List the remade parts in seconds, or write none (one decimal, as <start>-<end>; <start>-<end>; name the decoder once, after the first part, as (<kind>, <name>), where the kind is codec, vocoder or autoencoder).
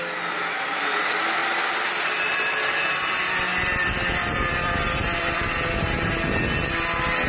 1.4-5.7 (vocoder, BigVGAN v2)